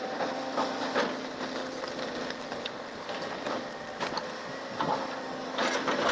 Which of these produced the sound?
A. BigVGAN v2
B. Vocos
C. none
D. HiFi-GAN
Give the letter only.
C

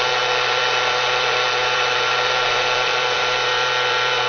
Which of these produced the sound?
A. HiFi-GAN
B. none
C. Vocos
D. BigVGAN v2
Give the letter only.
D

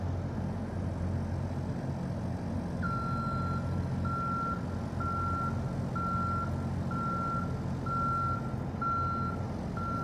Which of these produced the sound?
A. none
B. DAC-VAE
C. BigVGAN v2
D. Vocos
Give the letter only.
A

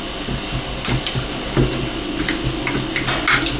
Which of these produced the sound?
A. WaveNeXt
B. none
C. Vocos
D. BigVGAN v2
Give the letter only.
B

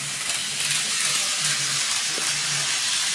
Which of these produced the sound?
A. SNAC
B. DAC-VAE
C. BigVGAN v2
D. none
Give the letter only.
D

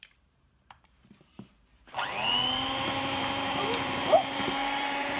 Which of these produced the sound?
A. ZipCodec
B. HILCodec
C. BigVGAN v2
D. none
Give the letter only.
C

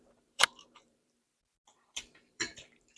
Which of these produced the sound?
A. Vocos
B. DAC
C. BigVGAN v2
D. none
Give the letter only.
C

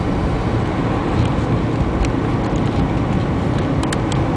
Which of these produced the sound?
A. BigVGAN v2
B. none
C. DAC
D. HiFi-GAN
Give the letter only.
B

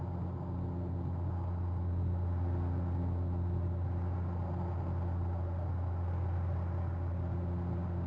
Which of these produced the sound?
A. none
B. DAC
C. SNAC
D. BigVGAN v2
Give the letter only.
A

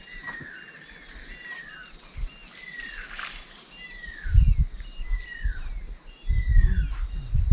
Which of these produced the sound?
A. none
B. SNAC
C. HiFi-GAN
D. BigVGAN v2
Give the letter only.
A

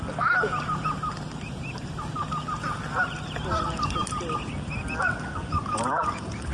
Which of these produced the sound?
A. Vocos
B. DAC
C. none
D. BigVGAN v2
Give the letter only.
D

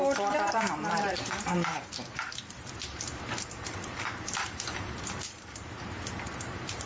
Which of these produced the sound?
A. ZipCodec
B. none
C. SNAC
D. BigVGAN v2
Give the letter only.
D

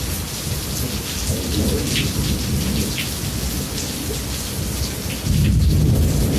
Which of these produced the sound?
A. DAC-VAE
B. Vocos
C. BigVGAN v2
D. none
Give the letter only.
D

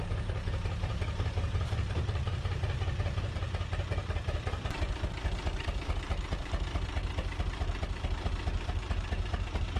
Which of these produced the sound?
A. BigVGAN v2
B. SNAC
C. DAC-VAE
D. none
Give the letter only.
A